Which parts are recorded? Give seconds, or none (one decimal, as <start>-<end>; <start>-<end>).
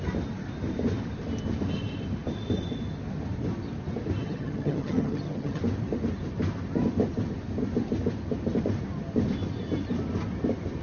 0.0-4.2; 5.6-10.8